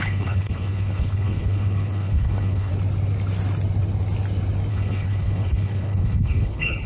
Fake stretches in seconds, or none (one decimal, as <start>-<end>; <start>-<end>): 0.0-2.7; 4.7-6.9